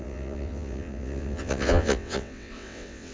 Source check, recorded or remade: remade